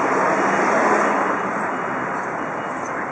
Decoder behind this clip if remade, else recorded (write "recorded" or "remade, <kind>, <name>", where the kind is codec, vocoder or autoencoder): recorded